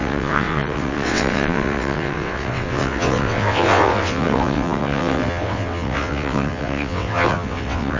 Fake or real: fake